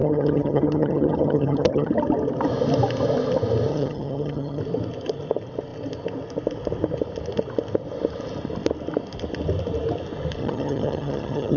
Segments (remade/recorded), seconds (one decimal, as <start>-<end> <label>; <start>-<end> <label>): 0.0-1.9 remade; 1.9-3.7 recorded; 3.7-4.6 remade; 4.6-10.4 recorded; 10.4-11.6 remade